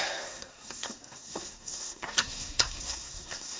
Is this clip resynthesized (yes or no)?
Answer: yes